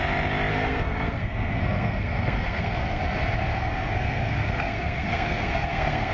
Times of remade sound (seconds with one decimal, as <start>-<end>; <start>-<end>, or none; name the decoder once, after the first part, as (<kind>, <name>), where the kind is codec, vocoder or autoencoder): 0.5-3.0 (codec, SNAC); 3.5-6.1